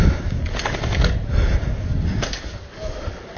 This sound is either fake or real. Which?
real